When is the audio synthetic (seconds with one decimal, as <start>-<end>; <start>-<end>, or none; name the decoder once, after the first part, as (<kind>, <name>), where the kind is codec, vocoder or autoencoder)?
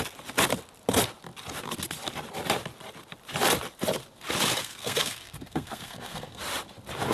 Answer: 4.6-6.4 (codec, SNAC)